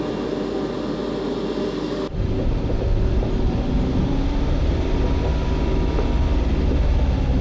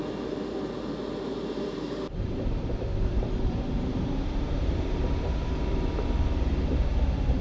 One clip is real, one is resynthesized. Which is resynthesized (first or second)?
second